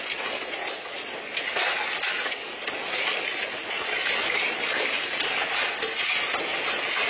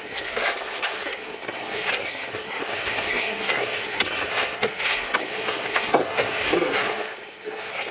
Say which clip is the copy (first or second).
second